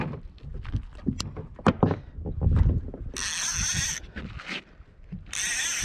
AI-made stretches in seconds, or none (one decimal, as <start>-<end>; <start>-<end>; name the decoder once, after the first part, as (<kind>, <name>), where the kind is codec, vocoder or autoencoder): none